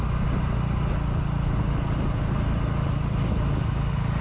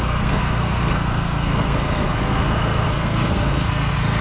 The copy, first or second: second